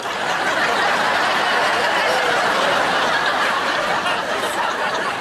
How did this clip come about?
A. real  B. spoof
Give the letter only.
A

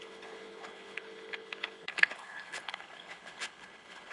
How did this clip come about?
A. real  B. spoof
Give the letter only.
B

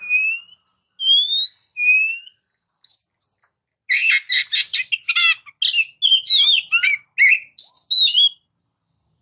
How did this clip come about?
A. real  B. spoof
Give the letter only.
A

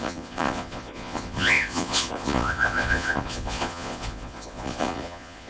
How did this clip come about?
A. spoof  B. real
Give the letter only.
A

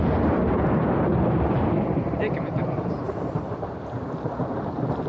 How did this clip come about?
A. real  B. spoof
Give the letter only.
B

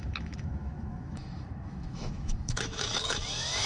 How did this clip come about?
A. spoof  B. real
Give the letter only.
A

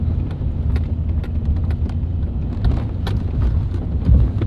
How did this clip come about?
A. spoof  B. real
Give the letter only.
B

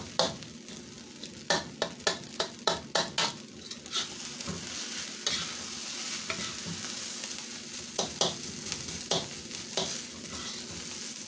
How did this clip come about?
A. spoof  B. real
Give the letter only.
B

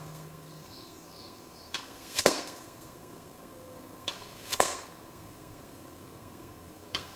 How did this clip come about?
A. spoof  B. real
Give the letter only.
A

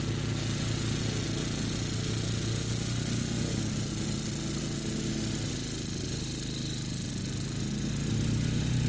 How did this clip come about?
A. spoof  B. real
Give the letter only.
B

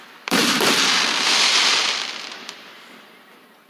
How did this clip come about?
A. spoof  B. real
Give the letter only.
B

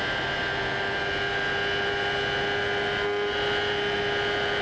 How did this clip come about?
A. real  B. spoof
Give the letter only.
A